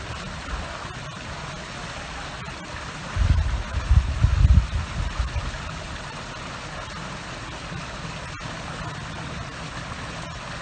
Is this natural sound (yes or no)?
yes